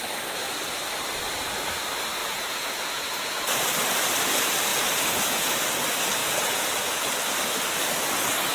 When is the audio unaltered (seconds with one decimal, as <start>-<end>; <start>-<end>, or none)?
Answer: 0.0-2.2; 3.4-4.7; 5.6-6.2; 7.0-8.5